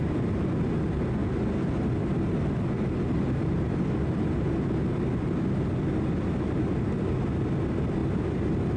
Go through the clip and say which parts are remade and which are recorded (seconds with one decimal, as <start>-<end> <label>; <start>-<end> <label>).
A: 0.0-8.8 recorded